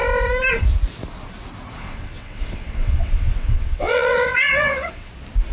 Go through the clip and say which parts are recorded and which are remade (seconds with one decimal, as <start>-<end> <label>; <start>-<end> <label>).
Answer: 0.0-1.8 recorded; 1.8-5.1 remade; 5.1-5.5 recorded